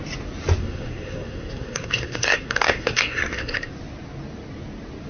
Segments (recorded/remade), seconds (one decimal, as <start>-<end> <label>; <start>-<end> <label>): 0.0-0.6 recorded; 0.6-3.7 remade; 3.7-5.1 recorded